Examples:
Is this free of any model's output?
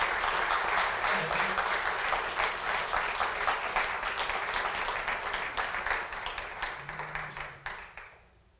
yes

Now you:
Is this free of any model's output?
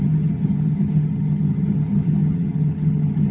no